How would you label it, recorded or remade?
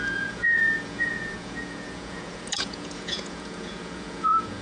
remade